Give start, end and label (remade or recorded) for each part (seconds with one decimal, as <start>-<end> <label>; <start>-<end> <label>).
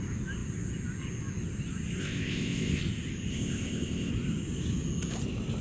0.0-2.0 recorded; 2.0-2.8 remade; 2.8-3.3 recorded; 3.3-4.1 remade; 4.1-5.6 recorded